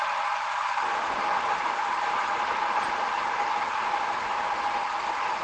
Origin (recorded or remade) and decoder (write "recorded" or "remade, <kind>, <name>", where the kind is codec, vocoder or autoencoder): recorded